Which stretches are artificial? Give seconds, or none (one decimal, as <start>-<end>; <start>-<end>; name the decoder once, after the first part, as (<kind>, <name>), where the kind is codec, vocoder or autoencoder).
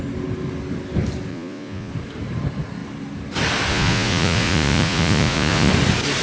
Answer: 1.3-1.9 (vocoder, Vocos); 3.7-5.7